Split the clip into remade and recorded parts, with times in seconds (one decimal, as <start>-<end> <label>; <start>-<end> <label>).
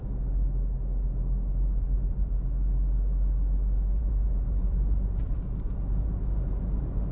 0.0-4.0 recorded; 4.0-7.1 remade